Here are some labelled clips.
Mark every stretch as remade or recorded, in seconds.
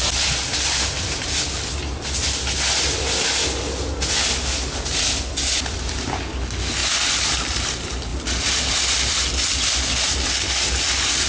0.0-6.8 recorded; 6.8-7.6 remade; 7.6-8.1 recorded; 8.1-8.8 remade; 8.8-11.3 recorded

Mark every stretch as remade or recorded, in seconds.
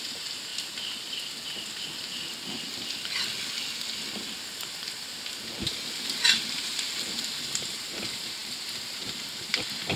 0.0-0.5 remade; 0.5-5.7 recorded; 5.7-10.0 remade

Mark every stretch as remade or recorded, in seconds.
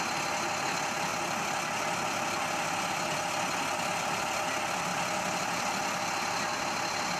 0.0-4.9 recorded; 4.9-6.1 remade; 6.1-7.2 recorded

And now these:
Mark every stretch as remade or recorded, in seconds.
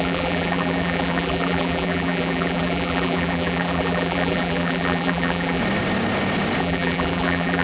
0.0-5.6 remade; 5.6-6.6 recorded; 6.6-7.6 remade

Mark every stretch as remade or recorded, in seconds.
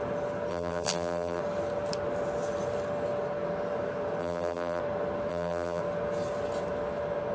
0.0-0.5 recorded; 0.5-1.4 remade; 1.4-4.2 recorded; 4.2-4.8 remade; 4.8-5.3 recorded; 5.3-5.8 remade; 5.8-7.3 recorded